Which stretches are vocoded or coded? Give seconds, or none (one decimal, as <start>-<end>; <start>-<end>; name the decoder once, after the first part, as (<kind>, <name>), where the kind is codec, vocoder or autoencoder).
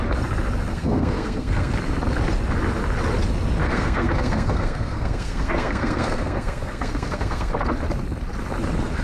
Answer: 0.7-1.7 (codec, SNAC); 3.6-7.5